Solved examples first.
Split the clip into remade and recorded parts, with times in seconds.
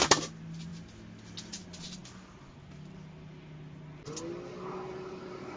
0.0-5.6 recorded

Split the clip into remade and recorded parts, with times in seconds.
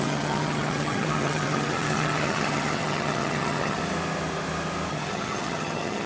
0.0-3.8 remade; 3.8-4.9 recorded; 4.9-6.1 remade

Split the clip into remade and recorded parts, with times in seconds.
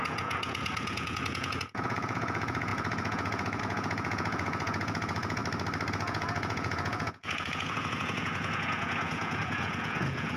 0.0-5.4 remade; 5.4-5.9 recorded; 5.9-10.4 remade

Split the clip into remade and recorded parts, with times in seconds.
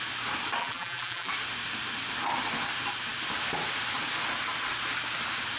0.0-0.6 recorded; 0.6-1.3 remade; 1.3-5.6 recorded